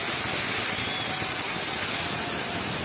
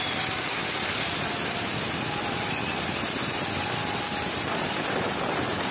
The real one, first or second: first